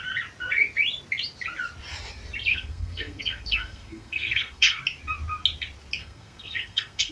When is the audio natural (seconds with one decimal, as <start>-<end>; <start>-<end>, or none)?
0.0-2.5; 4.8-6.0

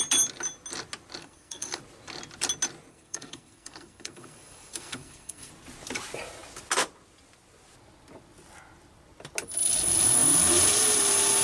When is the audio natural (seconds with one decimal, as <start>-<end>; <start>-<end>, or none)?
0.0-1.2; 1.8-2.9; 5.5-11.4